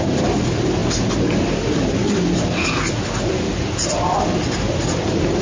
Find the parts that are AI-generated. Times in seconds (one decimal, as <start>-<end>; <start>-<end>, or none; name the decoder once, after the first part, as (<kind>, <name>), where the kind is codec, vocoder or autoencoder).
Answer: none

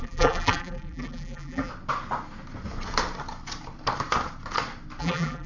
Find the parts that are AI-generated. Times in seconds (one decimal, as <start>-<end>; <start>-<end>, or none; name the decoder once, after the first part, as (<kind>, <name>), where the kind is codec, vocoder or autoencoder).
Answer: 0.0-1.7 (vocoder, BigVGAN v2); 5.0-5.5